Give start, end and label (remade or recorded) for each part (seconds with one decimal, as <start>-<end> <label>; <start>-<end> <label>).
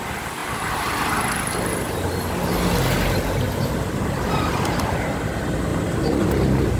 0.0-5.7 recorded; 5.7-6.3 remade; 6.3-6.8 recorded